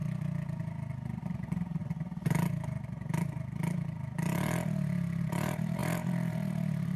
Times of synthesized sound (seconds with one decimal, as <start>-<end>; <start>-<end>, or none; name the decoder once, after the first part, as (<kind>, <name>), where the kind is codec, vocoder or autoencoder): 1.2-1.8 (vocoder, BigVGAN v2); 5.2-7.0